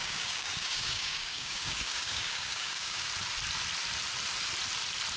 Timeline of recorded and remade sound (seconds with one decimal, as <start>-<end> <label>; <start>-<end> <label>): 0.0-3.1 remade; 3.1-5.2 recorded